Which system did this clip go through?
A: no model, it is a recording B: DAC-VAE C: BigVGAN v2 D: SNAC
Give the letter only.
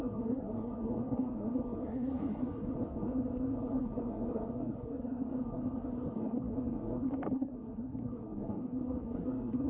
D